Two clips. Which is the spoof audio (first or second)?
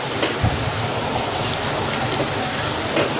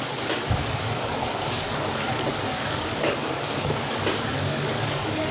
second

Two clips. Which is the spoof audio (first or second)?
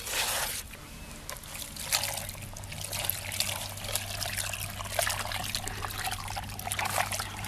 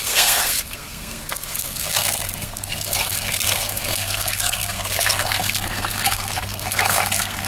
second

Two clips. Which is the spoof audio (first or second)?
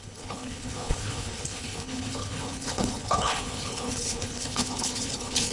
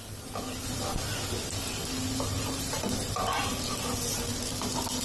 first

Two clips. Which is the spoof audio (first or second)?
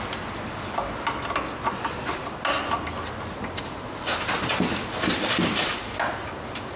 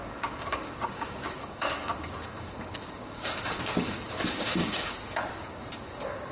second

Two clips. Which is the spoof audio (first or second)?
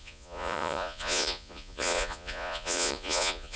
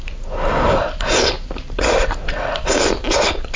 first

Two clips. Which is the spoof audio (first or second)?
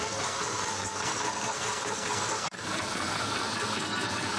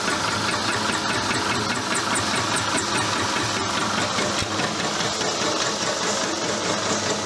first